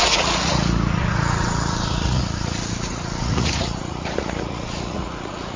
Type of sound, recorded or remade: remade